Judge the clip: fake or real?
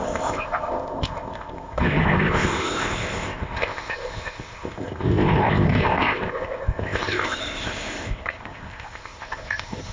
fake